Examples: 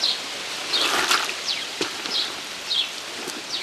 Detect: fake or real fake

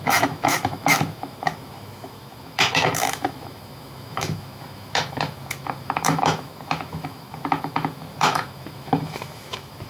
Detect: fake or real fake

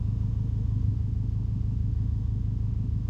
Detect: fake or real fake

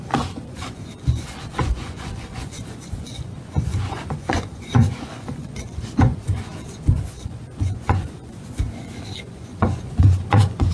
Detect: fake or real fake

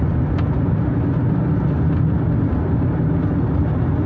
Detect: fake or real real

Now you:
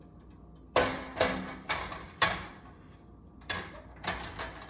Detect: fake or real real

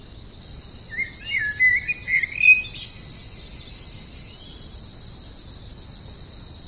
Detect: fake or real real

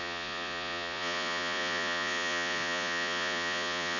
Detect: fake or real fake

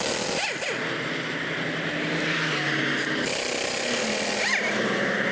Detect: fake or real real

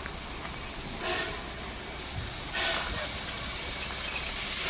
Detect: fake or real real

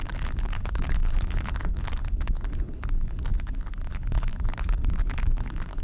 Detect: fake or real fake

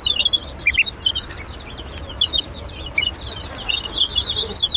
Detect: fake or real real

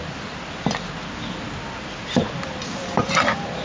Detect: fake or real real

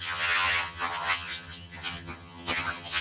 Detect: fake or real fake